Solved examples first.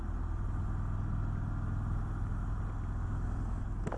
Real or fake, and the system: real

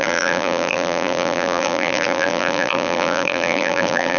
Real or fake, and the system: fake, vocoder, BigVGAN v2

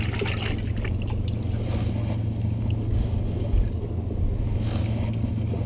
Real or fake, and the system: real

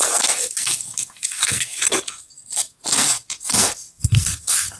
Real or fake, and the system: fake, codec, SNAC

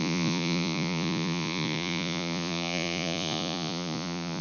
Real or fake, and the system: fake, vocoder, Vocos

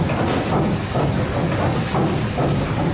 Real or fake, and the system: real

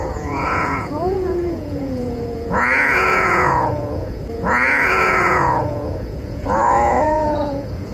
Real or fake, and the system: fake, vocoder, Vocos